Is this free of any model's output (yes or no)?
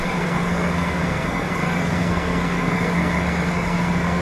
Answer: no